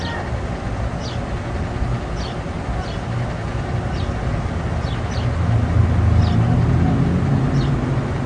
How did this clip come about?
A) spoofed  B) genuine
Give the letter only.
B